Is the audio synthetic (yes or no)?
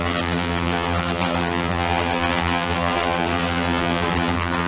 yes